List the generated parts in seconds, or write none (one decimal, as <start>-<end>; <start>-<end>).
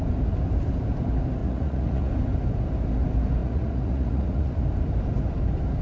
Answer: 1.4-2.1; 3.4-4.5